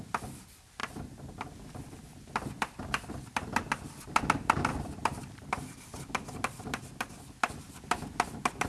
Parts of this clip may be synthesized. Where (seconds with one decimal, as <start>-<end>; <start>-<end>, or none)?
4.7-6.0